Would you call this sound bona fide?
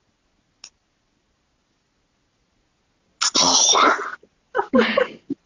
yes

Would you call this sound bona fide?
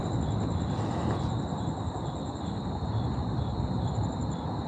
yes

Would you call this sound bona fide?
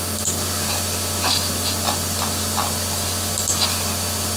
yes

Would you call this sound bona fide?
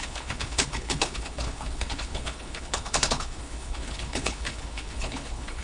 no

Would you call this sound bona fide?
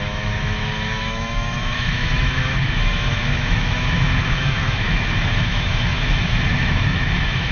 no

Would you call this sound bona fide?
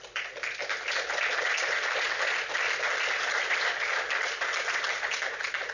yes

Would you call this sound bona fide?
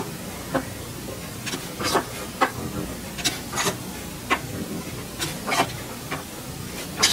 yes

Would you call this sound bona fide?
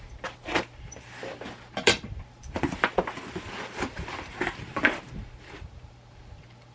no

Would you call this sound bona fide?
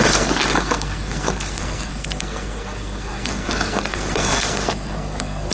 no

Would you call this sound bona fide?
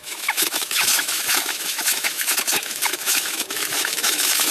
no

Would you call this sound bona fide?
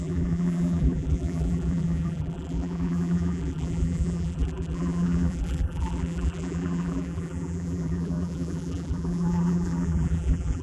no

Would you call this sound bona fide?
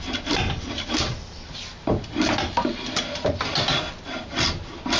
yes